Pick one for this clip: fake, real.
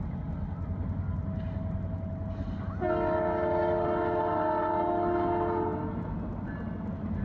real